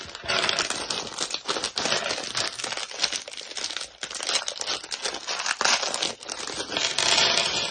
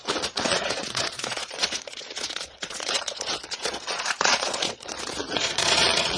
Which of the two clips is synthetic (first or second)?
second